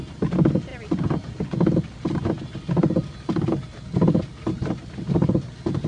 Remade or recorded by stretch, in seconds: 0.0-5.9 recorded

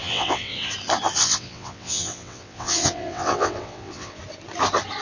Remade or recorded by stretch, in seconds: 0.0-0.7 remade; 0.7-1.2 recorded; 1.2-4.2 remade; 4.2-5.0 recorded

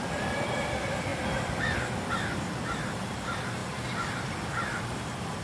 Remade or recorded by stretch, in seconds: 0.0-5.4 recorded

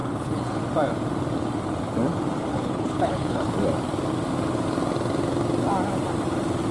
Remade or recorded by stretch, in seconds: 0.0-0.6 remade; 0.6-2.5 recorded; 2.5-3.5 remade; 3.5-6.7 recorded